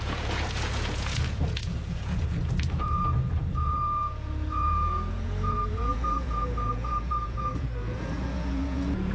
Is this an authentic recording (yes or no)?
no